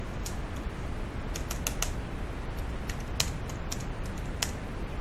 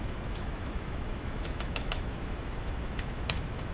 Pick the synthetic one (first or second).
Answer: second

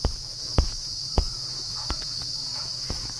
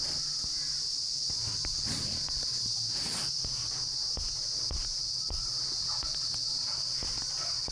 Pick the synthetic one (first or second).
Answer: first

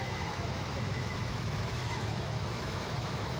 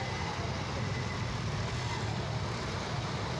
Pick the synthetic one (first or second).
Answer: first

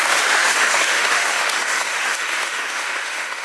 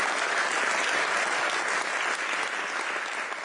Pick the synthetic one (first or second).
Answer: first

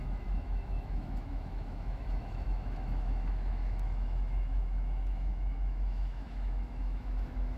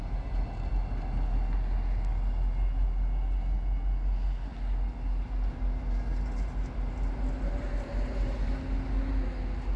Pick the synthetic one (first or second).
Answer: first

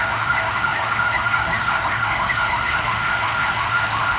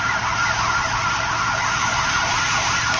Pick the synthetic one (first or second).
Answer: first